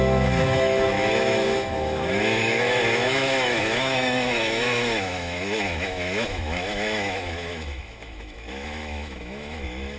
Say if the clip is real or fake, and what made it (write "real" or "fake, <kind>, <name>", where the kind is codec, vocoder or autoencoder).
fake, autoencoder, DAC-VAE